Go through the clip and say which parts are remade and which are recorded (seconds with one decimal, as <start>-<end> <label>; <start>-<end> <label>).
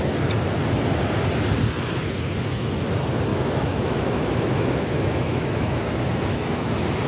0.0-3.3 recorded; 3.3-5.8 remade; 5.8-7.1 recorded